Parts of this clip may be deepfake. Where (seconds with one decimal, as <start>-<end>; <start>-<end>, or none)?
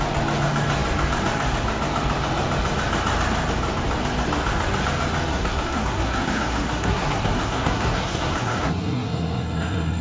5.3-10.0